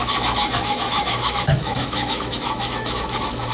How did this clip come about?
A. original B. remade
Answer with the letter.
B